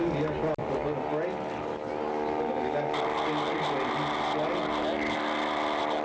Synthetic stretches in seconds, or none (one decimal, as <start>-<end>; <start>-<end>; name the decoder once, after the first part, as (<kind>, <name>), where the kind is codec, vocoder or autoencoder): none